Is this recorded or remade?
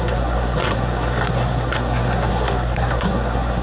remade